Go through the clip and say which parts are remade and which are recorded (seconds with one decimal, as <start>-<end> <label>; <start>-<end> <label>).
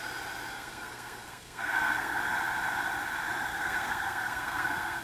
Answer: 0.0-0.5 recorded; 0.5-2.2 remade; 2.2-3.5 recorded; 3.5-5.0 remade